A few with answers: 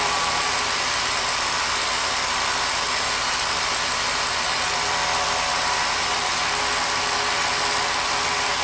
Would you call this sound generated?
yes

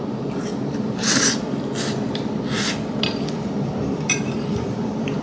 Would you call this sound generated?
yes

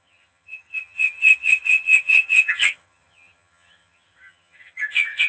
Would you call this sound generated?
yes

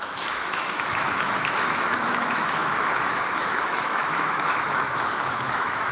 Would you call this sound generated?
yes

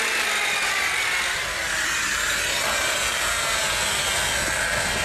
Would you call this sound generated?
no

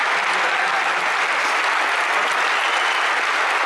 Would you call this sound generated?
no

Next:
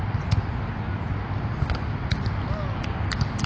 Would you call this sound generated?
no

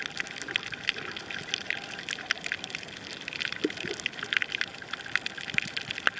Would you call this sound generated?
no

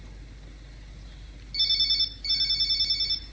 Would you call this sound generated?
no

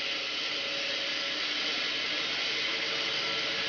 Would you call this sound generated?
yes